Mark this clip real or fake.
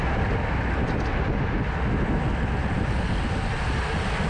real